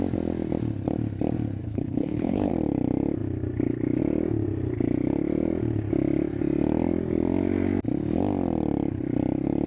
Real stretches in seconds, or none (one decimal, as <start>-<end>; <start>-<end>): 0.0-1.6; 2.5-9.7